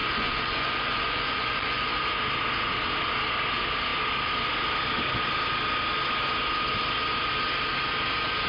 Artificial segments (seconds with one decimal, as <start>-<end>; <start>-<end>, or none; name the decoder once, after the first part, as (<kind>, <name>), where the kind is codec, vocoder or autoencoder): 0.0-1.9 (vocoder, Vocos)